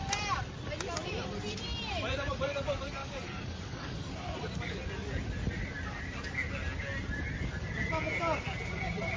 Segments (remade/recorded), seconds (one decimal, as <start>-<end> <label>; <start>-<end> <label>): 0.0-3.0 recorded; 3.0-4.1 remade; 4.1-9.2 recorded